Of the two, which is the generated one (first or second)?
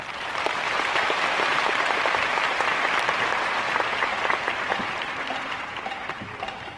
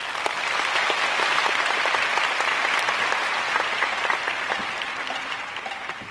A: first